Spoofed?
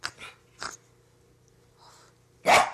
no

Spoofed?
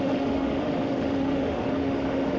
yes